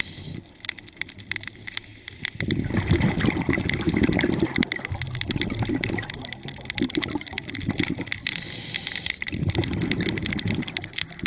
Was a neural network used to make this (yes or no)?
no